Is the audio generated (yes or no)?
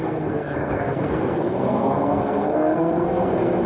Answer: yes